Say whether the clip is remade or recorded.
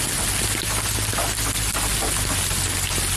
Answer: recorded